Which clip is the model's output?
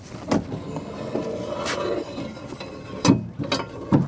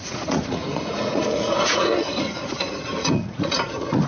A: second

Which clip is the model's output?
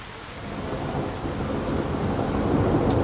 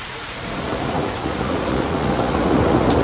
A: second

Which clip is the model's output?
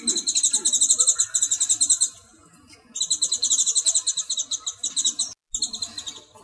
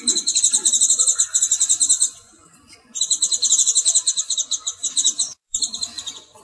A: second